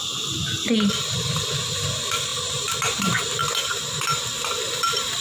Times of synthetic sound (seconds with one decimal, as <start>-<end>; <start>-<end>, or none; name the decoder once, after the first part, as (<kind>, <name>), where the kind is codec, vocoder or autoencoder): 0.0-0.4 (vocoder, BigVGAN v2); 0.9-3.4; 4.8-5.2